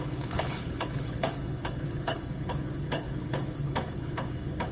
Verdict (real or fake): fake